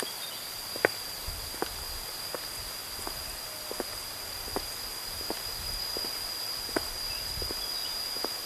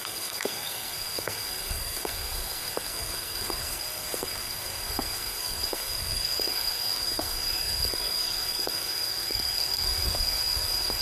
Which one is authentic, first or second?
first